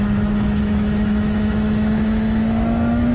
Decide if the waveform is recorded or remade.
remade